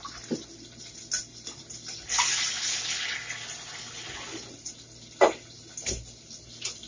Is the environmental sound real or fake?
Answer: real